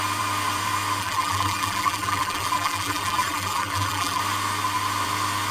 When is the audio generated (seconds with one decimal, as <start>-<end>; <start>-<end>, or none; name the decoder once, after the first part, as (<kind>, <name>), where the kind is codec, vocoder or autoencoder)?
1.0-4.2 (vocoder, BigVGAN v2)